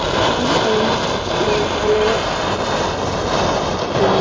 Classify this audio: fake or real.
real